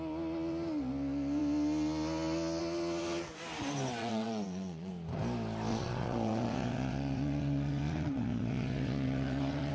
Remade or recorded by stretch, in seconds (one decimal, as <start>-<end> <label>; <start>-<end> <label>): 0.0-4.0 recorded; 4.0-4.9 remade; 4.9-5.7 recorded; 5.7-9.7 remade